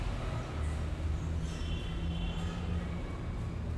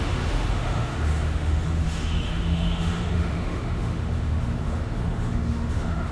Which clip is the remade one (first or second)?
second